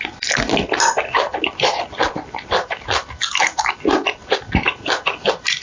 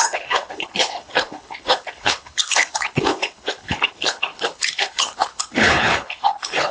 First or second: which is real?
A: first